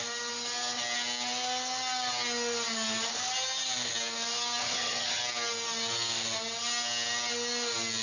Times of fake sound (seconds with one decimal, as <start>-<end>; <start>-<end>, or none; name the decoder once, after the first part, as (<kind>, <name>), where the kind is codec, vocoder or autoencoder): 4.6-5.2 (vocoder, HiFi-GAN)